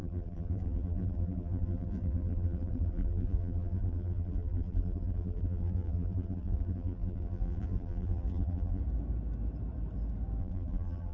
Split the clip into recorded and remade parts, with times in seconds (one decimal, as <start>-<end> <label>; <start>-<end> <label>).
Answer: 0.0-8.8 remade; 8.8-10.4 recorded; 10.4-11.1 remade